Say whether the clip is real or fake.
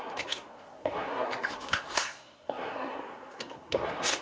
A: fake